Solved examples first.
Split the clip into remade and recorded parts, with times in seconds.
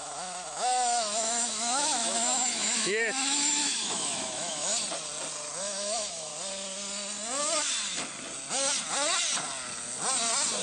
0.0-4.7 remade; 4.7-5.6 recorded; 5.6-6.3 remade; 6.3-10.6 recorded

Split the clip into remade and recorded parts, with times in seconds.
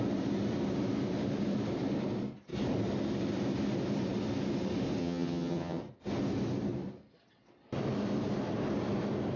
0.0-5.0 recorded; 5.0-5.8 remade; 5.8-9.4 recorded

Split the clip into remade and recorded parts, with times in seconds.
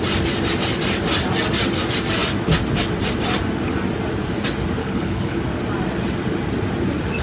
0.0-4.8 recorded; 4.8-5.4 remade; 5.4-7.2 recorded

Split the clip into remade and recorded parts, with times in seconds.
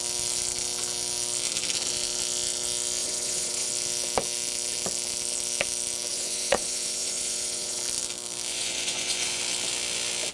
0.0-3.0 recorded; 3.0-3.7 remade; 3.7-6.1 recorded; 6.1-7.8 remade; 7.8-8.5 recorded; 8.5-9.4 remade; 9.4-10.3 recorded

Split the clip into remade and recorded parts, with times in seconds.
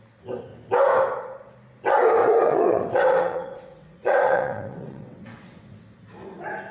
0.0-2.2 recorded; 2.2-5.8 remade; 5.8-6.7 recorded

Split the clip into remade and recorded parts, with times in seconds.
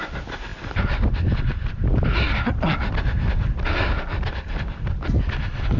0.0-5.8 recorded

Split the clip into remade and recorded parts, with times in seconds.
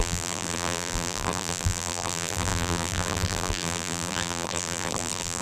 0.0-5.4 remade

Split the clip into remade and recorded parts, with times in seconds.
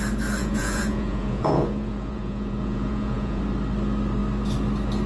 0.0-0.4 recorded; 0.4-3.4 remade; 3.4-5.1 recorded